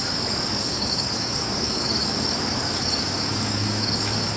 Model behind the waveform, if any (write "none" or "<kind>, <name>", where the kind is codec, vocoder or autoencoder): codec, DAC